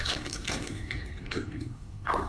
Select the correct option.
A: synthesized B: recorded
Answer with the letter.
A